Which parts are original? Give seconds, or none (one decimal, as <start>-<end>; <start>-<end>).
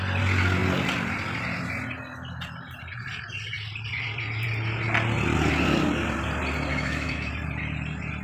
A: 0.0-6.7; 7.3-8.2